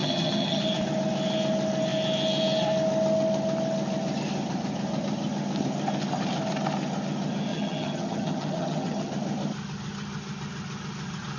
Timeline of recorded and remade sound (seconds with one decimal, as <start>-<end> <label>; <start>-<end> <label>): 0.0-0.6 remade; 0.6-7.5 recorded; 7.5-9.1 remade; 9.1-11.4 recorded